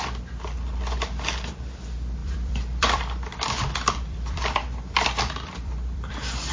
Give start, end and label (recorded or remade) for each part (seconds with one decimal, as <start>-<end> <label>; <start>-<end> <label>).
0.0-2.2 recorded; 2.2-6.1 remade; 6.1-6.5 recorded